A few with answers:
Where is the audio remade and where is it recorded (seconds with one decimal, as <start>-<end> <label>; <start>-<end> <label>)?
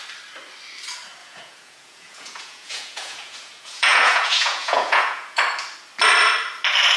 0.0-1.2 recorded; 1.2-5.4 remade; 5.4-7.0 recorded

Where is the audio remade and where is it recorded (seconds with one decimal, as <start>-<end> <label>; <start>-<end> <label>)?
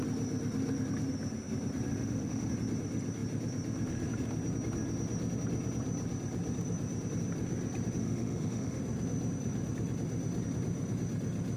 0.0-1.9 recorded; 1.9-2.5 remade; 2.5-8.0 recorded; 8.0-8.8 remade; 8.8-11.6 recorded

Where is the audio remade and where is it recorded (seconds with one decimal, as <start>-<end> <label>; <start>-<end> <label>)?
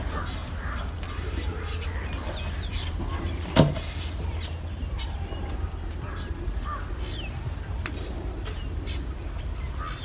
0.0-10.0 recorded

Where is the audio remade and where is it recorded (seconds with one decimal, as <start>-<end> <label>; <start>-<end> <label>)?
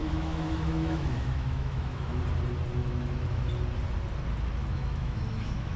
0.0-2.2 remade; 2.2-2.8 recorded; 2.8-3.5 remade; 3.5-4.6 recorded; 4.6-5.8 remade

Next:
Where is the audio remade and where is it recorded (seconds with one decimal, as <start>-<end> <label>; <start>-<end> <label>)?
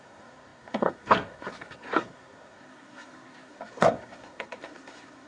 0.0-5.3 remade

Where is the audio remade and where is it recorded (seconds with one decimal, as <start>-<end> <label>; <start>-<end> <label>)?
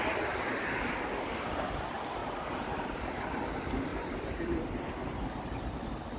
0.0-2.2 recorded; 2.2-3.1 remade; 3.1-3.9 recorded; 3.9-4.9 remade; 4.9-6.2 recorded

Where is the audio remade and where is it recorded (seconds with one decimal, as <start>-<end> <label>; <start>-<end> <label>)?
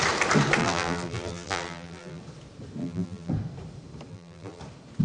0.0-0.6 recorded; 0.6-2.2 remade; 2.2-2.8 recorded; 2.8-3.3 remade; 3.3-4.1 recorded; 4.1-4.6 remade; 4.6-5.0 recorded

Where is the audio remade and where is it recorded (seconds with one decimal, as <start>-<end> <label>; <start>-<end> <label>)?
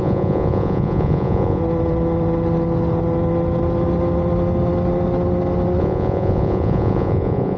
0.0-1.6 remade; 1.6-5.8 recorded; 5.8-7.6 remade